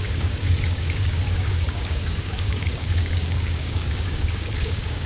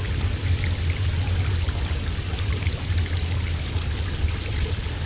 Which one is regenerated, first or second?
first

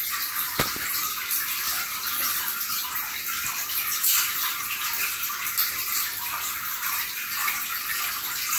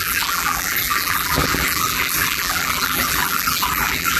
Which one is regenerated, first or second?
second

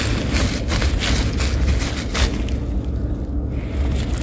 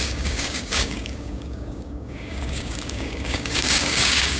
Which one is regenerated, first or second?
second